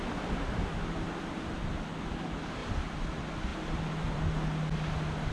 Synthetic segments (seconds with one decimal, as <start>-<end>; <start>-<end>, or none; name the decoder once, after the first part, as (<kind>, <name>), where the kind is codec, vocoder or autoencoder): 2.6-3.1 (vocoder, BigVGAN v2); 3.5-4.2